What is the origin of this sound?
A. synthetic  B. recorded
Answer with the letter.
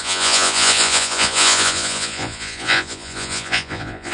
A